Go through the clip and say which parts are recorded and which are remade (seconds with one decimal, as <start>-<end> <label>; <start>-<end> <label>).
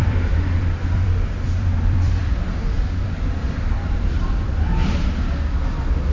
0.0-4.8 remade; 4.8-6.1 recorded